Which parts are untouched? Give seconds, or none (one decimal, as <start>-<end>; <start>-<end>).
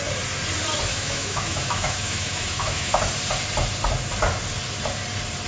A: 0.0-0.9; 3.0-5.5